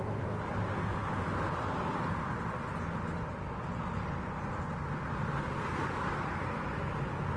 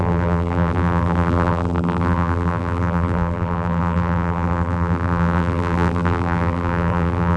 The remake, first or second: second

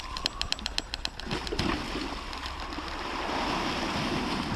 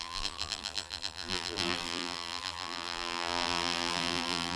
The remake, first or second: second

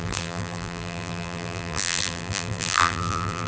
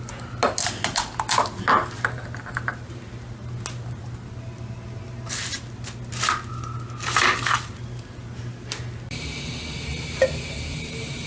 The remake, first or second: first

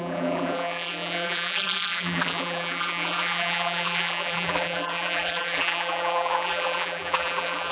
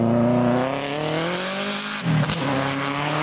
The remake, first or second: first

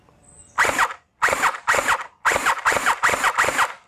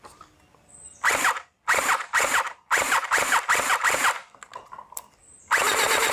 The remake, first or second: second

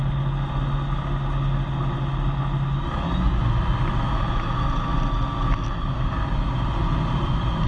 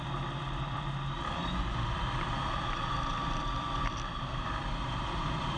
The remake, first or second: second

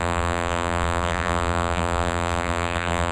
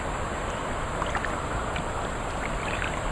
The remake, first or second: first